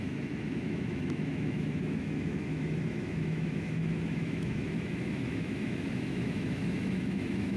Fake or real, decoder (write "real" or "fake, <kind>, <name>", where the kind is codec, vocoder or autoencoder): fake, autoencoder, DAC-VAE